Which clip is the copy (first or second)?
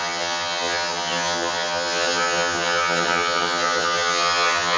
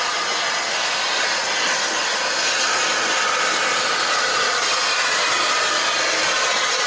first